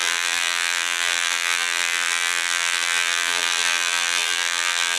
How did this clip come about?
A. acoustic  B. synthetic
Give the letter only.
B